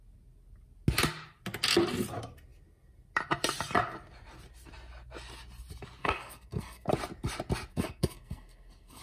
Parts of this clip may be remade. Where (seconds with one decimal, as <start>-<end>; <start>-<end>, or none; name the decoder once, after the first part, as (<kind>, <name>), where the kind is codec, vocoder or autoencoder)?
6.0-6.9 (codec, SNAC); 7.7-9.0